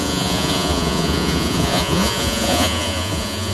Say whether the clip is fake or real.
fake